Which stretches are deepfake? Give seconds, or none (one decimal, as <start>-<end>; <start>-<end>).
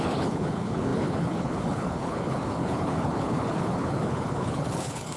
0.0-5.2